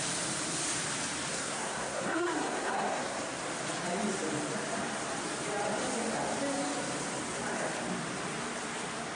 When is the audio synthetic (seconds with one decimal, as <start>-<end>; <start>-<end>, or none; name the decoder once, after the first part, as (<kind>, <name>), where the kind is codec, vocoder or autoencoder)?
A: 1.3-3.2 (codec, SNAC)